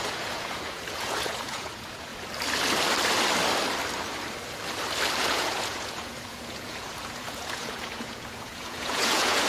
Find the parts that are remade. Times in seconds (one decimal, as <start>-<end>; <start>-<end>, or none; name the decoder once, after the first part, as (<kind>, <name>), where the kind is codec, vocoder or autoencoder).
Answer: 0.0-2.1 (vocoder, Vocos); 5.2-9.5